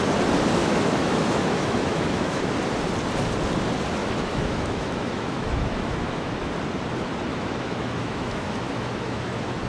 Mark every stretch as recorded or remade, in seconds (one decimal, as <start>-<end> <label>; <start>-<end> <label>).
0.0-0.6 recorded; 0.6-2.4 remade; 2.4-4.0 recorded; 4.0-6.5 remade; 6.5-7.3 recorded; 7.3-9.7 remade